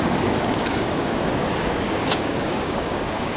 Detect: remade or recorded remade